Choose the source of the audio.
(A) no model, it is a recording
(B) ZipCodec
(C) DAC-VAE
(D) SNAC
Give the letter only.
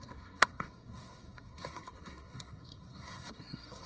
D